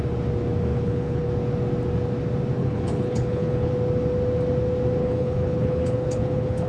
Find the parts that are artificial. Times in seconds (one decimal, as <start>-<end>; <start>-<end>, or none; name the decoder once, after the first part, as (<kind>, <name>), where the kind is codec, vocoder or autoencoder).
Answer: 0.7-1.3 (codec, HILCodec); 2.6-3.7; 5.0-6.7